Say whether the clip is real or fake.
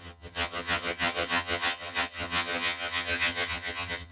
fake